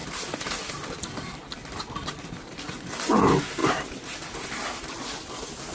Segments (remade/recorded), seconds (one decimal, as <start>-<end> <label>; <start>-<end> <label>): 0.0-1.0 remade; 1.0-1.6 recorded; 1.6-2.9 remade; 2.9-5.7 recorded